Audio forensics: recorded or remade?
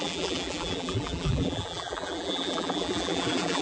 remade